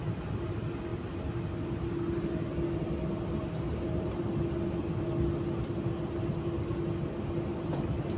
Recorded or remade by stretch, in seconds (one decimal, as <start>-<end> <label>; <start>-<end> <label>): 0.0-3.4 recorded; 3.4-4.2 remade; 4.2-8.2 recorded